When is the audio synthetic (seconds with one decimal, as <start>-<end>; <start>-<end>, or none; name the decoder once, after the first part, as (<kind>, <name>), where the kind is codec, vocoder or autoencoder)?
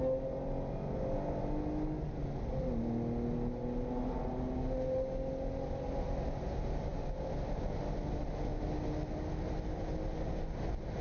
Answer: none